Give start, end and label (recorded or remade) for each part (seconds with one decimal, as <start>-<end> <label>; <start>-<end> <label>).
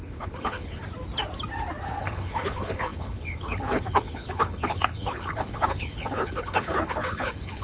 0.0-0.8 remade; 0.8-2.0 recorded; 2.0-7.6 remade